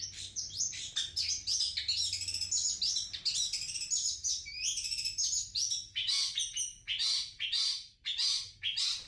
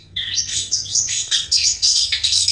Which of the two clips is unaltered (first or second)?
first